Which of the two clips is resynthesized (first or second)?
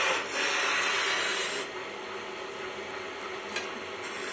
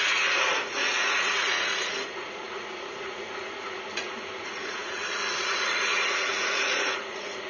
second